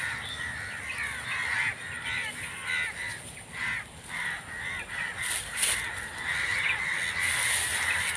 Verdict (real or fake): real